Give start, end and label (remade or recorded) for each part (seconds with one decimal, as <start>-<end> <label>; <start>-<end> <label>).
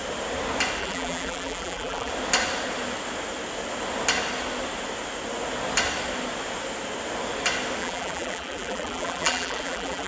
0.0-0.8 recorded; 0.8-2.1 remade; 2.1-7.8 recorded; 7.8-10.1 remade